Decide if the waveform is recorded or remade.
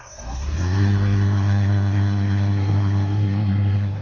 remade